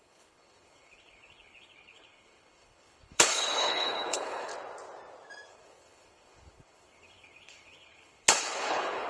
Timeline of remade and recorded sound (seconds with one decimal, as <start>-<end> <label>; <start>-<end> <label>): 0.0-4.5 remade; 4.5-5.5 recorded; 5.5-9.1 remade